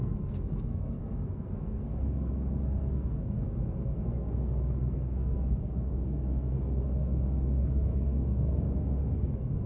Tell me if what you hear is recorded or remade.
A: remade